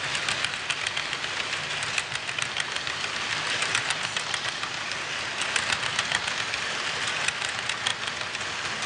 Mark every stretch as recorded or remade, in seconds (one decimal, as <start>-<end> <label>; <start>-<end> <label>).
0.0-8.9 recorded